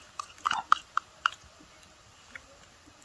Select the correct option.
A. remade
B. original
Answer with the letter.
A